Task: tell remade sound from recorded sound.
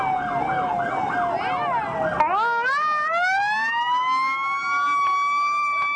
recorded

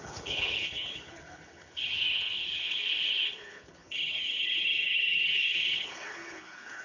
remade